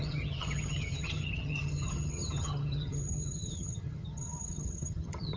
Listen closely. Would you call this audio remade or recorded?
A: remade